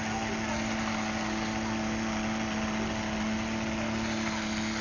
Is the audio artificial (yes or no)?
no